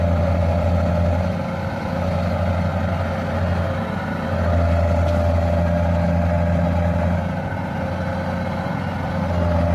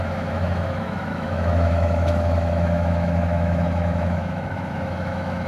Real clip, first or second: first